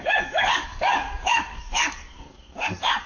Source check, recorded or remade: remade